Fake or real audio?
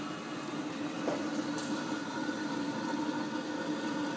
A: real